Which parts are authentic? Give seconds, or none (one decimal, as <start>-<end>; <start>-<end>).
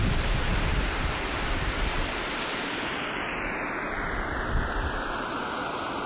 0.0-0.7; 4.4-6.1